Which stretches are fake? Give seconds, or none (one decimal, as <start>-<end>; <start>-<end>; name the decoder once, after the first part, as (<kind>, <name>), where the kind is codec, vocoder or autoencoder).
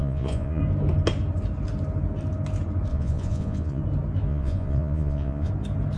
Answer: 0.0-0.6 (vocoder, Vocos); 2.9-3.8; 4.3-5.5